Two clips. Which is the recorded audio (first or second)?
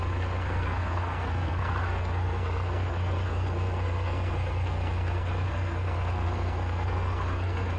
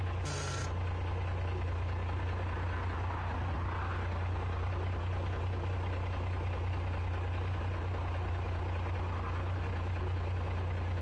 second